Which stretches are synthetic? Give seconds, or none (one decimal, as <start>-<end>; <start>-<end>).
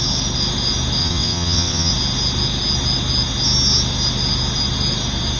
1.0-1.9